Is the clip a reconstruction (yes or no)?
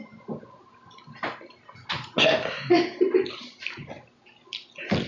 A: no